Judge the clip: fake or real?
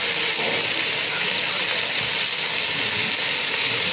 real